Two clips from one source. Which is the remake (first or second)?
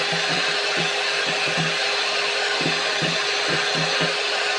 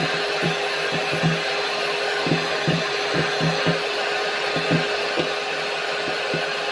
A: first